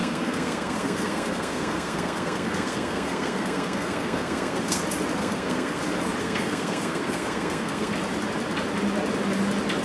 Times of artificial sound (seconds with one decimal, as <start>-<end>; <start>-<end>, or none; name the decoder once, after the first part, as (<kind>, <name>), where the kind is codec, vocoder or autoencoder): 0.0-4.8 (codec, SNAC); 5.2-5.8; 6.2-7.9